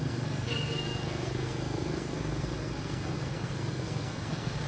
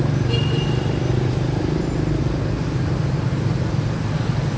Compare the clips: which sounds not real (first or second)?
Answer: first